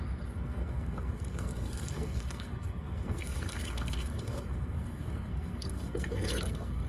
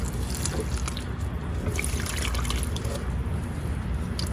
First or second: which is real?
second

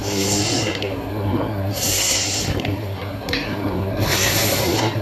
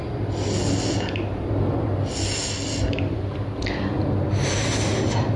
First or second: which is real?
second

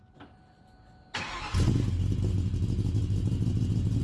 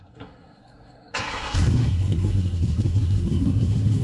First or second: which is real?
first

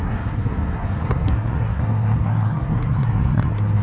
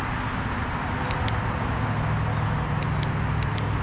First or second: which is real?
second